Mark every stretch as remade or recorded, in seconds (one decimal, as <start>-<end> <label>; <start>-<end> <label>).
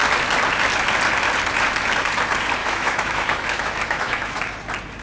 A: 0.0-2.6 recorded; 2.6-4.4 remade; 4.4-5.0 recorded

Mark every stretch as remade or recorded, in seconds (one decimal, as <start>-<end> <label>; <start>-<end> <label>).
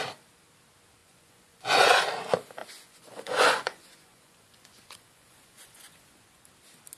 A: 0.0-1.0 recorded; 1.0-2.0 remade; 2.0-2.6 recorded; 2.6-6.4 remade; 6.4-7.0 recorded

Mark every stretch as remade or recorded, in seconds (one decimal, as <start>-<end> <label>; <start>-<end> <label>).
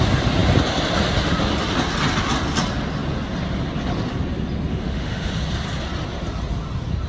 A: 0.0-4.7 recorded; 4.7-5.3 remade; 5.3-7.1 recorded